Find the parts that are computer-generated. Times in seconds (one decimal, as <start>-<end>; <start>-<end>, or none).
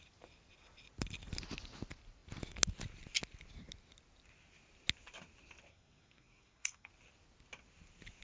5.7-6.9